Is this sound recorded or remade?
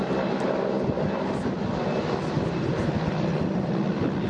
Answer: recorded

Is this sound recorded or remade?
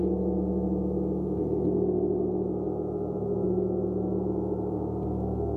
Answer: recorded